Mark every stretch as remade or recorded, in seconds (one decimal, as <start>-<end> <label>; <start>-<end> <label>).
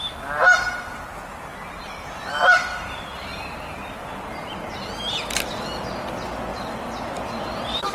0.0-1.5 recorded; 1.5-2.3 remade; 2.3-6.5 recorded; 6.5-7.9 remade